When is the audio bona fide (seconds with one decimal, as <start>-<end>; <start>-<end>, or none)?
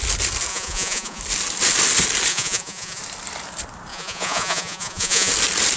0.0-0.5; 1.2-2.3; 3.0-3.9; 5.3-5.8